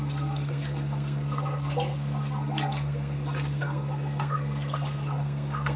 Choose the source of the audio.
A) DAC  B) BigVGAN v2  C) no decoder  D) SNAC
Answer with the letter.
D